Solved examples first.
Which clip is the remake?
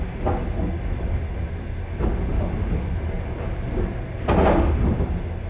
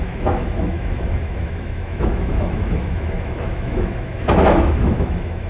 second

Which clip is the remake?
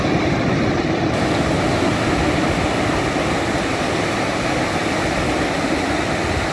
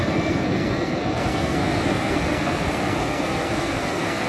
second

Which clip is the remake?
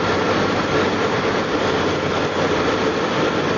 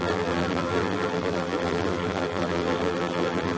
second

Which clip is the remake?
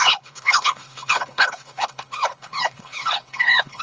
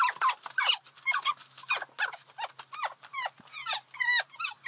first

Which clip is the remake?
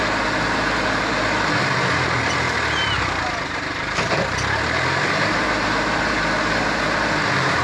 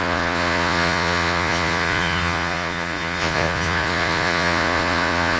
second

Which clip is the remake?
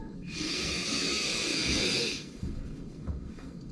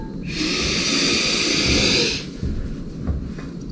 first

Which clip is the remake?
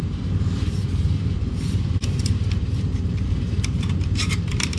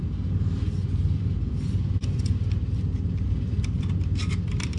first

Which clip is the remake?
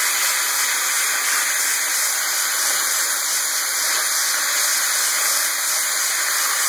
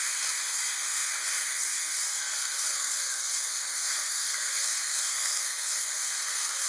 second